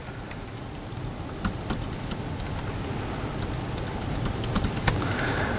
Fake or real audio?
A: real